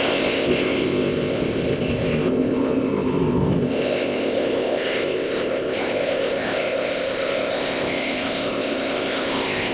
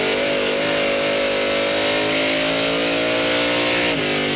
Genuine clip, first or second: second